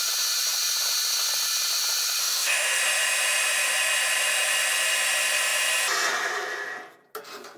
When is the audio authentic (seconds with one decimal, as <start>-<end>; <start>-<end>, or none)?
0.0-2.2; 2.8-7.6